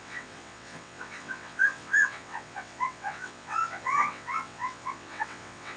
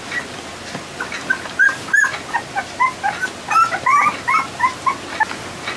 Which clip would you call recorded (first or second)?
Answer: second